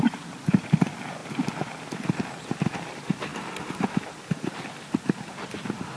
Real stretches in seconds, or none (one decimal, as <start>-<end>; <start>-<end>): 1.2-2.4; 3.3-5.5